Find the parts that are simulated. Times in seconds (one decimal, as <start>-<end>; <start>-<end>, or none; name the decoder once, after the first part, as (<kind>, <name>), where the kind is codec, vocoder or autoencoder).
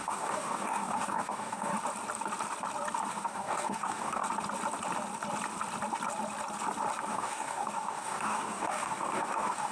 0.0-1.7 (codec, DAC); 3.1-4.2; 7.1-9.7